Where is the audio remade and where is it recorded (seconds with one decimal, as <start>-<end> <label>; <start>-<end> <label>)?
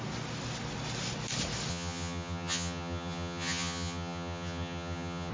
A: 0.0-1.7 recorded; 1.7-5.3 remade